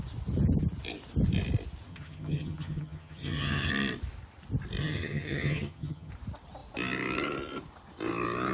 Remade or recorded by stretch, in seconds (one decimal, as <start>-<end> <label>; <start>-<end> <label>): 0.0-1.9 recorded; 1.9-3.7 remade; 3.7-4.8 recorded; 4.8-6.1 remade; 6.1-8.5 recorded